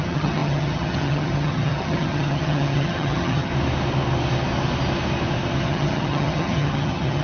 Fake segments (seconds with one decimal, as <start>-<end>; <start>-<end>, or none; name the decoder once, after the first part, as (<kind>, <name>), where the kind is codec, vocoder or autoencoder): 0.0-3.5 (vocoder, HiFi-GAN); 5.6-7.2